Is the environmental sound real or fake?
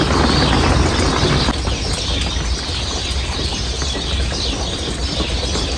real